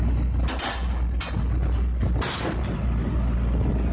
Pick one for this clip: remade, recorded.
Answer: recorded